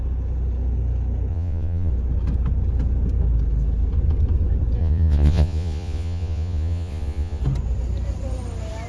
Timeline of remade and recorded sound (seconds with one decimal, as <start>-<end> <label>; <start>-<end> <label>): 0.0-1.3 recorded; 1.3-1.9 remade; 1.9-4.8 recorded; 4.8-7.4 remade; 7.4-8.9 recorded